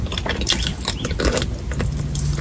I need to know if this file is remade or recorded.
recorded